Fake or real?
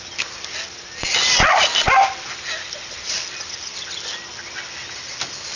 real